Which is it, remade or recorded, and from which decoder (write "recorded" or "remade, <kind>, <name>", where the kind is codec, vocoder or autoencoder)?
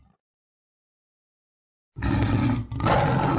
recorded